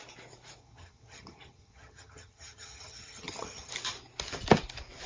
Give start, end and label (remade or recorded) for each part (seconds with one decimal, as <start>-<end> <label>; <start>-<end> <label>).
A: 0.0-0.6 recorded; 0.6-3.7 remade; 3.7-5.1 recorded